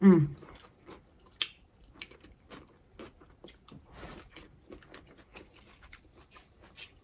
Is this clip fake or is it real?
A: real